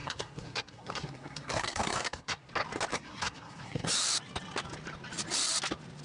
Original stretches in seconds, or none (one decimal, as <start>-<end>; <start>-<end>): 2.5-2.9; 3.9-6.0